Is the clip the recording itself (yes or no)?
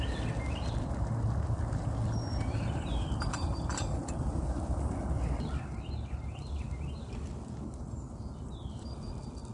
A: yes